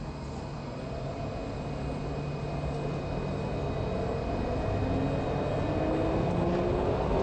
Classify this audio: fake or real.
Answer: real